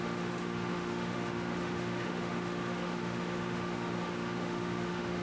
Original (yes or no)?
no